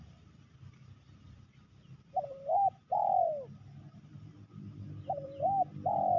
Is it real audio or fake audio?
real